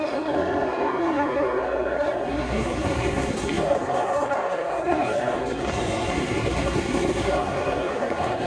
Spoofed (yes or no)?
yes